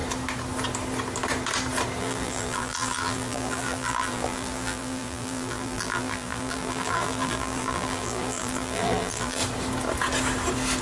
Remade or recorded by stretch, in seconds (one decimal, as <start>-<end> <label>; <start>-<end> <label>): 0.0-2.0 recorded; 2.0-9.4 remade; 9.4-10.8 recorded